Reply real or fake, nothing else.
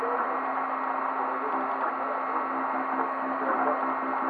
real